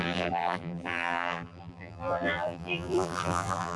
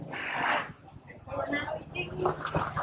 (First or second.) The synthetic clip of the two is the first